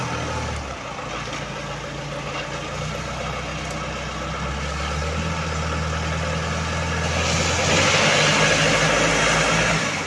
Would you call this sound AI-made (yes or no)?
no